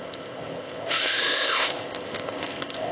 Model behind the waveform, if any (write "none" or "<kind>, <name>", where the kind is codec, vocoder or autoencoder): codec, ZipCodec